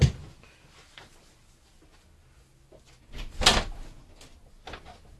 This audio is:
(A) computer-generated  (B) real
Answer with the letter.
B